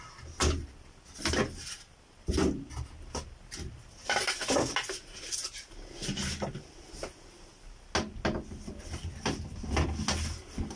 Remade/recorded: recorded